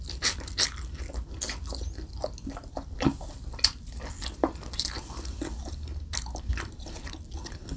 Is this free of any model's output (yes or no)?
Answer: yes